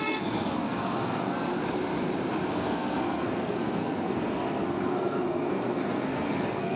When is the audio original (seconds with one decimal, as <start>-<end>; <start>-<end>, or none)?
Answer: 1.5-2.5